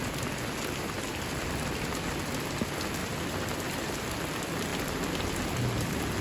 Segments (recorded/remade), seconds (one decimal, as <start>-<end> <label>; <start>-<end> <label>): 0.0-3.0 recorded; 3.0-4.2 remade; 4.2-4.7 recorded; 4.7-5.3 remade; 5.3-6.2 recorded